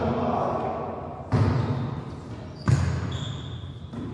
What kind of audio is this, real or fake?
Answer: real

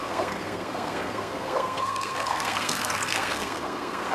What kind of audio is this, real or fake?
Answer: fake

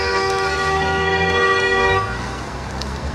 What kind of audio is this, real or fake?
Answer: fake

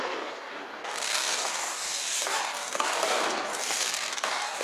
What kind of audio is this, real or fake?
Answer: fake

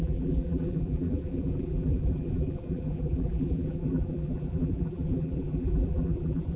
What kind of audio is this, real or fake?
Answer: fake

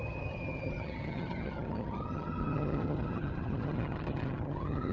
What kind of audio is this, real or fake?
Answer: fake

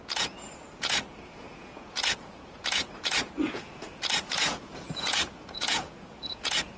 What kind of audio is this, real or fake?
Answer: fake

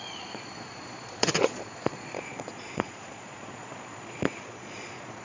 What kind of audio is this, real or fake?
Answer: fake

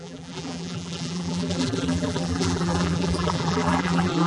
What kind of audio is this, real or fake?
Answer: fake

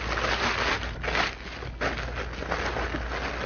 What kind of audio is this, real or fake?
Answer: real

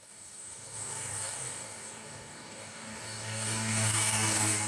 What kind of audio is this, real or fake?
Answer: fake